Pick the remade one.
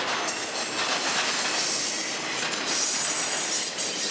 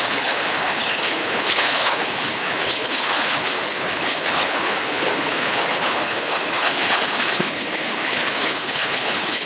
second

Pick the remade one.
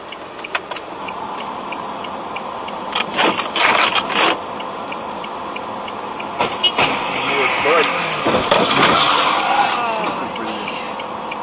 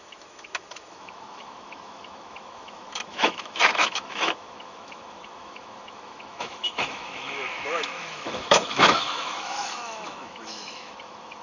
second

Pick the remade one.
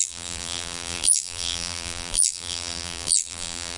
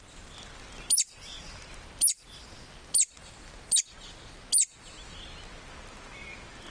first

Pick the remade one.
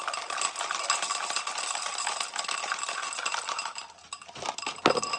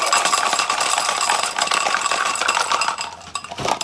second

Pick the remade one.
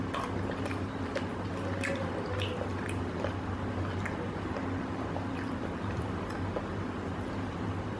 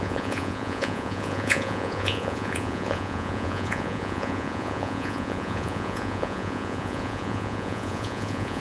second